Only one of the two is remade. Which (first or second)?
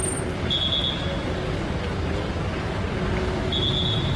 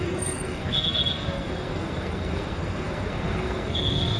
second